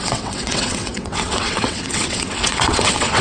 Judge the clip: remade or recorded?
remade